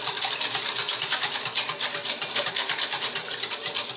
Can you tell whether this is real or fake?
real